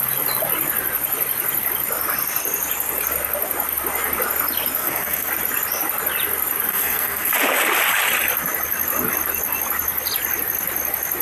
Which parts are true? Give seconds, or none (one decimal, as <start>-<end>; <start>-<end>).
0.0-4.8; 5.3-6.7; 7.3-11.2